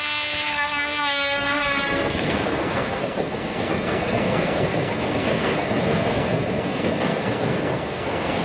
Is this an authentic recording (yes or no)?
no